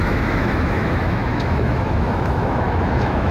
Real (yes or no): no